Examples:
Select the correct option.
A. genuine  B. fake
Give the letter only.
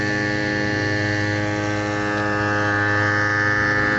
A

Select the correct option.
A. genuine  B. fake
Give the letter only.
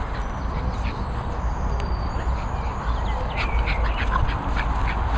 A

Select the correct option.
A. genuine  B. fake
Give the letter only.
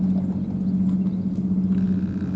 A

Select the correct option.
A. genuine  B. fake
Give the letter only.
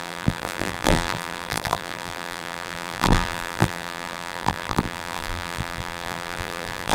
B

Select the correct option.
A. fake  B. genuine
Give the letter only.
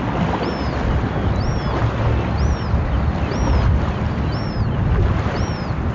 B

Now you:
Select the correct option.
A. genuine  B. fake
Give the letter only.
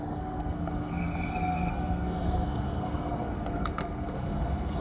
B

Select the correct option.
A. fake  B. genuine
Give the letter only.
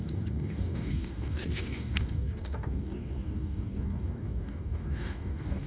A